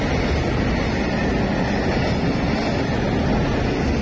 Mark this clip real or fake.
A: real